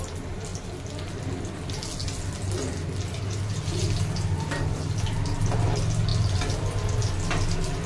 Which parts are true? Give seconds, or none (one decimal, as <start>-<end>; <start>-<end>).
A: 0.0-7.9